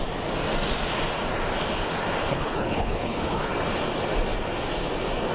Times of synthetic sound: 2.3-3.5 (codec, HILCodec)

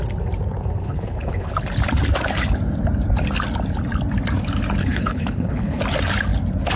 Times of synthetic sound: 0.8-1.5 (codec, HILCodec); 4.8-5.8

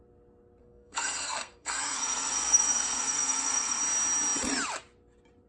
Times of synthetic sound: 0.6-3.8 (codec, SNAC)

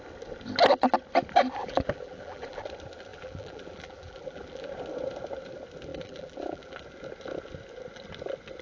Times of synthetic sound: 1.6-2.6 (vocoder, BigVGAN v2); 3.1-4.7; 5.9-6.8

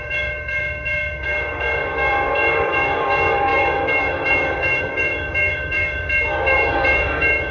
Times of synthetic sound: 0.0-7.5 (codec, DAC)

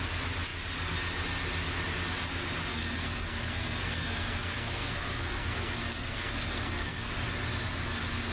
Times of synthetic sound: 2.7-7.1 (codec, SNAC)